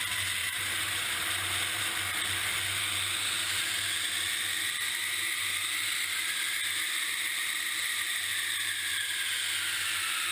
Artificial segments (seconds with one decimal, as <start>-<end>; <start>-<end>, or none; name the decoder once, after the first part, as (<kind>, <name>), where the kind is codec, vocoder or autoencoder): 0.4-1.9 (vocoder, BigVGAN v2); 8.3-9.2

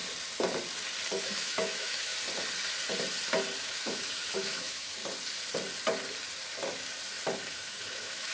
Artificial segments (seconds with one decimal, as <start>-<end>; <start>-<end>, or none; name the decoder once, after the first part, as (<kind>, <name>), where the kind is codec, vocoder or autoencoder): 1.2-2.1 (autoencoder, DAC-VAE); 3.6-5.0; 7.5-8.3

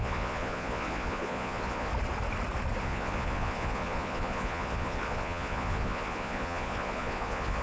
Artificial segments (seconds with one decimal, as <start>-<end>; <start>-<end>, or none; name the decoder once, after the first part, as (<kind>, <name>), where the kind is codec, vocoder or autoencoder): 0.0-1.9 (vocoder, Vocos); 2.8-7.6

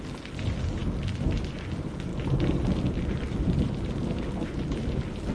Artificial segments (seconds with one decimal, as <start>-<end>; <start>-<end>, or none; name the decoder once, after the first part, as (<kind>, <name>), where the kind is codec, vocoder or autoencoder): 2.1-5.3 (vocoder, BigVGAN v2)

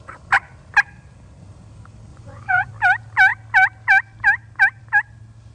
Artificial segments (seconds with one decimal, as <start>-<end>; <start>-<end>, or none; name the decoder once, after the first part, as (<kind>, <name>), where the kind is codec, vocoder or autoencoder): 2.1-2.7 (vocoder, Vocos)

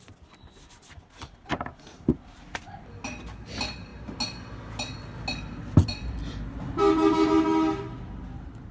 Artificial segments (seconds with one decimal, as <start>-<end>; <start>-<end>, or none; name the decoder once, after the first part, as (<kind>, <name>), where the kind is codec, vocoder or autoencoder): none

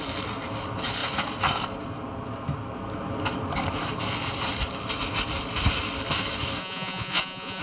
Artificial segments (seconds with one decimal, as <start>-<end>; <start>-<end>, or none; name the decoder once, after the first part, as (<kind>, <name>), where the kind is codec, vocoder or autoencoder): 6.6-7.6 (vocoder, Vocos)

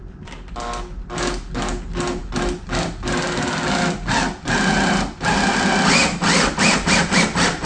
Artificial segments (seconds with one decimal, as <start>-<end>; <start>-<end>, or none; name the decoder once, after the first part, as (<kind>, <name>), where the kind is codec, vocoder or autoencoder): none